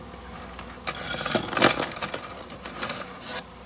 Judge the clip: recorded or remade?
recorded